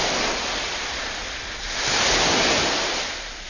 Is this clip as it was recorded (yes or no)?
yes